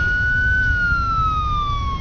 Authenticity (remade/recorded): recorded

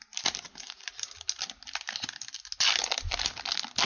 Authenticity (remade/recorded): recorded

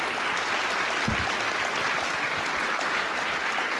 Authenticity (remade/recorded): recorded